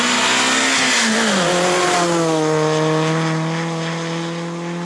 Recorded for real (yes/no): yes